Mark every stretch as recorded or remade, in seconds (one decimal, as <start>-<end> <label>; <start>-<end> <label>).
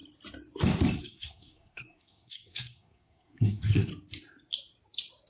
0.0-1.0 recorded; 1.0-3.9 remade; 3.9-5.3 recorded